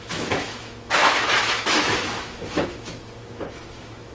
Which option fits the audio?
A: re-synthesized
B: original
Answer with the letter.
A